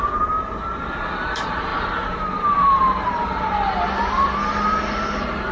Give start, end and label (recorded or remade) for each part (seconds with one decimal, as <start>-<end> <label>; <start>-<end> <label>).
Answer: 0.0-1.7 recorded; 1.7-3.7 remade; 3.7-5.5 recorded

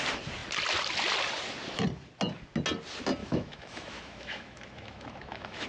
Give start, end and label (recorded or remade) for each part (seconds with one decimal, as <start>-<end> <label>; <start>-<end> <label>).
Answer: 0.0-3.2 recorded; 3.2-5.7 remade

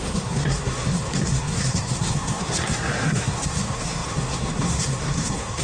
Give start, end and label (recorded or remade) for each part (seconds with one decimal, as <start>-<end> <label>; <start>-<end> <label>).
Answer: 0.0-5.6 remade